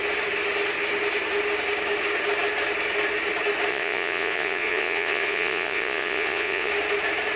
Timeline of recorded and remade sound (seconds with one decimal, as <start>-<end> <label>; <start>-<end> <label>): 0.0-3.7 recorded; 3.7-6.7 remade; 6.7-7.4 recorded